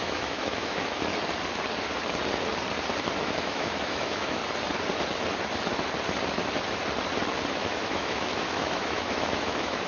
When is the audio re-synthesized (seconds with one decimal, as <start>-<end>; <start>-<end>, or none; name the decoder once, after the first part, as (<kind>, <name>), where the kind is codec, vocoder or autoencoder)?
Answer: 0.0-1.1 (autoencoder, DAC-VAE); 3.2-4.4; 7.5-9.9